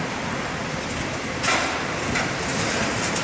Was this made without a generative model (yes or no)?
yes